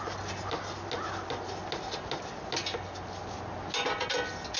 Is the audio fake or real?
real